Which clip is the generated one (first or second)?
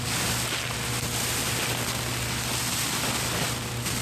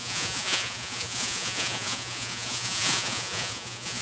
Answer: second